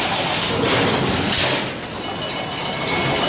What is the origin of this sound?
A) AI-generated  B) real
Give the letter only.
B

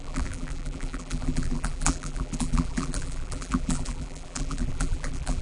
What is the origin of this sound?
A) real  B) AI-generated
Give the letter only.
B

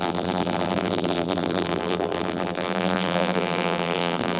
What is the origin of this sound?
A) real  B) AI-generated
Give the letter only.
B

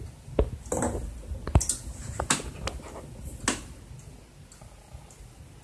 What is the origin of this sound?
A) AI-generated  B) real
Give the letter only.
B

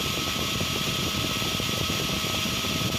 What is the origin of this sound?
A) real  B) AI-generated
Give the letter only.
B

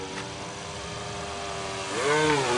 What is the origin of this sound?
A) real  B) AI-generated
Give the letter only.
B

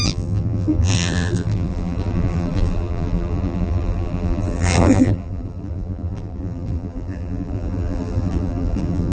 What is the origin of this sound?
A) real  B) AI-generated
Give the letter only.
B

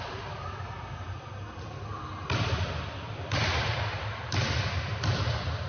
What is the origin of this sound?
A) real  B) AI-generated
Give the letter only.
B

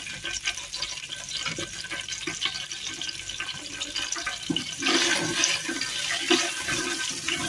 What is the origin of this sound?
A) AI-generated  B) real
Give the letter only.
B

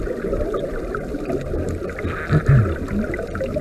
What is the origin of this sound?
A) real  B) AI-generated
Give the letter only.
A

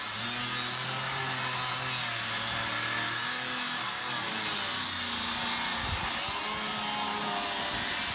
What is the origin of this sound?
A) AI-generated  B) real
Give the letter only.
B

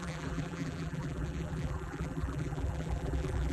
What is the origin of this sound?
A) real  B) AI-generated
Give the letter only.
B